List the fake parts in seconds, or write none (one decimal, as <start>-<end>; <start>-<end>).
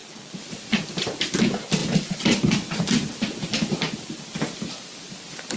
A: none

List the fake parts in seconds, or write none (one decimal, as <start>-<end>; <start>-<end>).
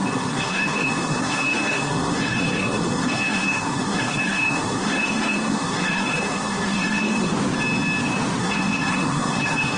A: 0.0-7.3; 8.4-9.8